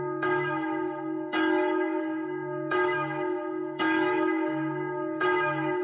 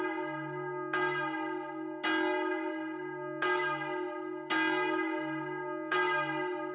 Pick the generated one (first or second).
first